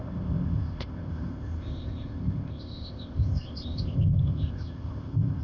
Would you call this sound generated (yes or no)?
yes